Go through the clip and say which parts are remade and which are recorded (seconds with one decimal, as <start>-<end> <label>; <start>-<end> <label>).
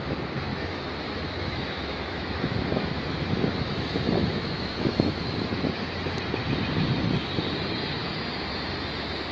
0.0-0.5 recorded; 0.5-5.7 remade; 5.7-9.3 recorded